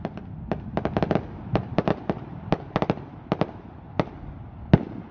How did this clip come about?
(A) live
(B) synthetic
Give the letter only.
A